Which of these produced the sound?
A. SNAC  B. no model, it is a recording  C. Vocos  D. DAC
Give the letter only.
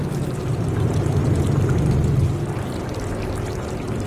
B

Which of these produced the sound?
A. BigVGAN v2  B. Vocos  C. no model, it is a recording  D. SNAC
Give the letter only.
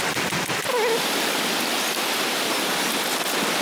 C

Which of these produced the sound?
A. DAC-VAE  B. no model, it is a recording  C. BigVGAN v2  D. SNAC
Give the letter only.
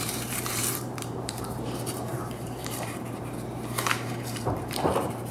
C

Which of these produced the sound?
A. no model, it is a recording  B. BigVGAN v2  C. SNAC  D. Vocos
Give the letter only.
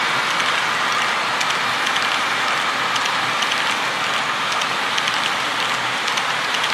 A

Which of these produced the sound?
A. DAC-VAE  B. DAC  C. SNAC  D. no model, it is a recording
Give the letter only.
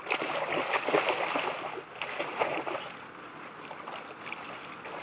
D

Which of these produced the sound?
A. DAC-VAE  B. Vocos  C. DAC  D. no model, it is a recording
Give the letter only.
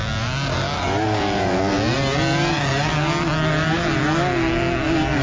D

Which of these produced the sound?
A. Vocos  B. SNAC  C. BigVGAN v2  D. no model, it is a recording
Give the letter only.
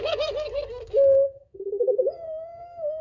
B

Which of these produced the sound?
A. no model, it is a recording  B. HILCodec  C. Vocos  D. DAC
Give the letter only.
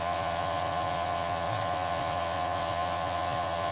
C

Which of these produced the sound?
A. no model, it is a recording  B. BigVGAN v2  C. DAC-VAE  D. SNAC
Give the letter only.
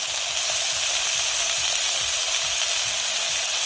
A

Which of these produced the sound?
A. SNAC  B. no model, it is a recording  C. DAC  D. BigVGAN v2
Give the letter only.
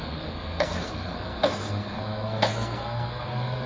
A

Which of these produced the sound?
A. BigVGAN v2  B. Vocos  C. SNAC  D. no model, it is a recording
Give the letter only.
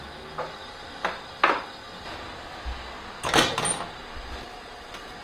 D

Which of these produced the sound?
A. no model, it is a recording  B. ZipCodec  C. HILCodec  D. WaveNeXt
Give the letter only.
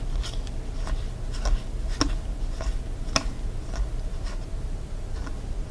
A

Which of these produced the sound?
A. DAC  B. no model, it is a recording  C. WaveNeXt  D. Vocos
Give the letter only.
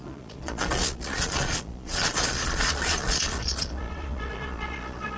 D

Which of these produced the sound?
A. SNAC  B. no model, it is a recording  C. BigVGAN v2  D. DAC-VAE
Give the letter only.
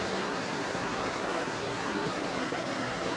A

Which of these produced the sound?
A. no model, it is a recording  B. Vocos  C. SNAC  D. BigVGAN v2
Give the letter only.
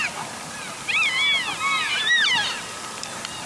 A